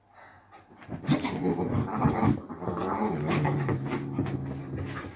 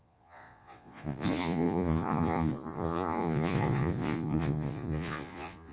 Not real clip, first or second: second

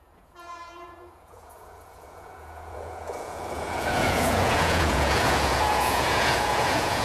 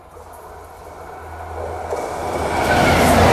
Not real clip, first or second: first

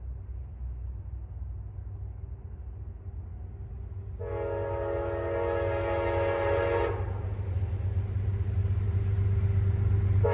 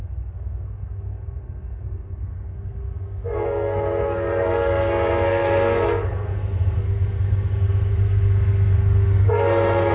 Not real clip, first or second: second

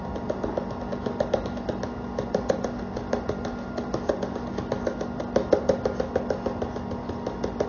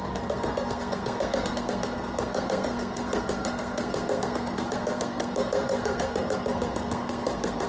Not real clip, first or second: second